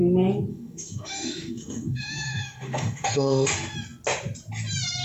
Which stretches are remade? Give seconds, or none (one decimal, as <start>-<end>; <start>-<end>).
0.5-3.5